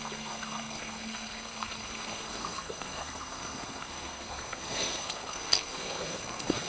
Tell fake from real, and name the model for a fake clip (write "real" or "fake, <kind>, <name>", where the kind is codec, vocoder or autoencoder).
fake, codec, SNAC